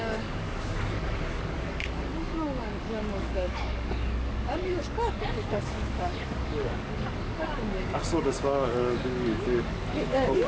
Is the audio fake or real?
fake